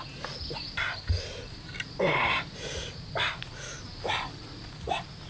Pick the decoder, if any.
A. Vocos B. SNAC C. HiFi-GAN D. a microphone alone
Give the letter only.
D